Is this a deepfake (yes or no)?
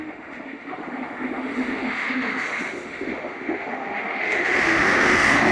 yes